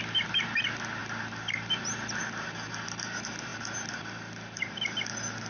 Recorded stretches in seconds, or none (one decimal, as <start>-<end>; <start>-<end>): 0.0-5.5